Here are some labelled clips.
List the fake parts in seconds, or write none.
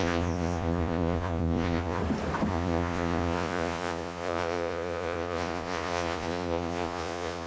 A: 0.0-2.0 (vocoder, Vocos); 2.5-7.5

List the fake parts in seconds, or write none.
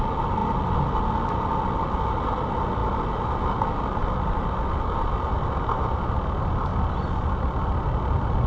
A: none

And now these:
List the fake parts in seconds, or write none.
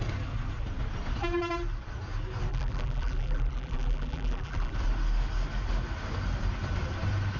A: 2.5-4.7 (vocoder, BigVGAN v2)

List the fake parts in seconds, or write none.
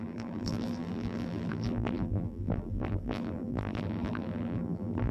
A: 0.0-5.1 (vocoder, BigVGAN v2)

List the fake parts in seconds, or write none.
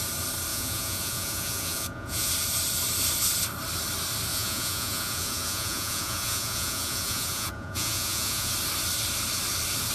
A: 0.5-2.3 (vocoder, Vocos); 4.3-8.5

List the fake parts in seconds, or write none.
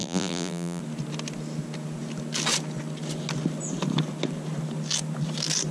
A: 0.0-0.8 (vocoder, BigVGAN v2)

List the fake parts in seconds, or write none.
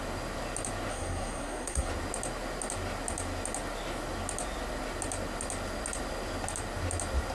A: 0.9-1.9 (codec, SNAC)